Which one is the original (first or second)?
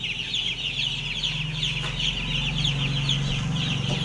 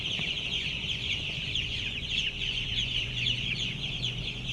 first